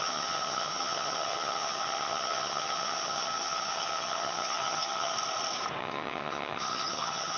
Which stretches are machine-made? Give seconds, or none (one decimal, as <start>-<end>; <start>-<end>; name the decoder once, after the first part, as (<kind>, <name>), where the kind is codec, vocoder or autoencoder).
0.0-5.1 (vocoder, HiFi-GAN); 5.8-7.4